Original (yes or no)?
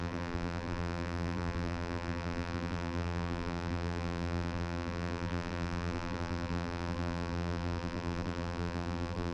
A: no